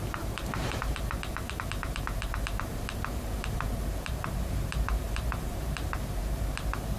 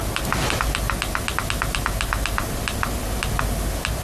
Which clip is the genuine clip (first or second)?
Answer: second